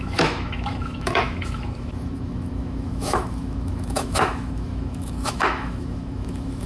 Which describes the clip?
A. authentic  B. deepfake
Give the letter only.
B